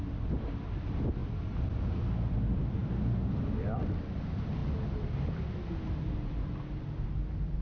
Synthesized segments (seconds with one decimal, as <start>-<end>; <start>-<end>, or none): 1.2-1.7; 2.8-3.4